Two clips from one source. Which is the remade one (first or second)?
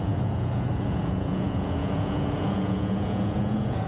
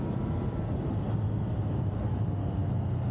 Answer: first